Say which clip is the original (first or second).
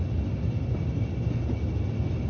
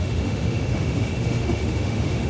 first